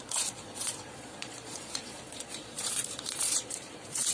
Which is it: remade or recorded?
remade